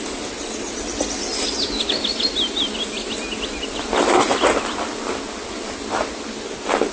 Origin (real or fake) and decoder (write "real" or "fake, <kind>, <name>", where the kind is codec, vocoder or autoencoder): real